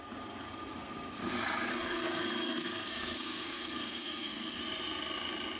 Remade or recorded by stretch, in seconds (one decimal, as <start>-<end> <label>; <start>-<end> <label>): 0.0-1.7 recorded; 1.7-4.6 remade; 4.6-5.6 recorded